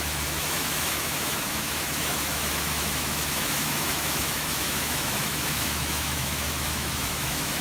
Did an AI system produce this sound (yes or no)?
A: yes